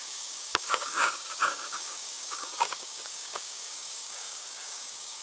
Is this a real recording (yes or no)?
no